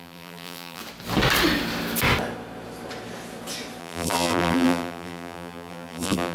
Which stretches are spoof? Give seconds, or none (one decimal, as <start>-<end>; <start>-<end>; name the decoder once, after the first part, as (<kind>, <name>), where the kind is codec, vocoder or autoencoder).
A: 0.0-0.8 (vocoder, BigVGAN v2); 3.8-6.3